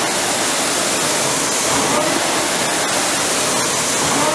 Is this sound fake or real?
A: real